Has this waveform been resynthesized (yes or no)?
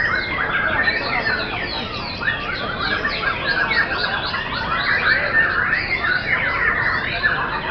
no